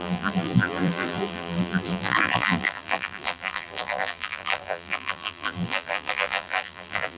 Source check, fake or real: fake